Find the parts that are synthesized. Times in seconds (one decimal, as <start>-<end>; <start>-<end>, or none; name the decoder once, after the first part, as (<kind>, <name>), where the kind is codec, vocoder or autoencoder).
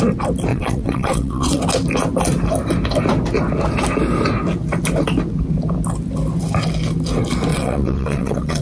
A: 0.5-1.6 (vocoder, WaveNeXt); 7.5-8.6